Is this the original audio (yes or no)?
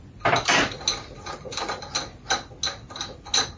yes